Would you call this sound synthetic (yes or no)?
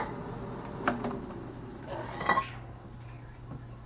no